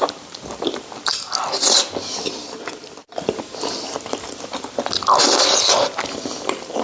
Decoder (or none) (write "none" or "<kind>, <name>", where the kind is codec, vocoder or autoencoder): none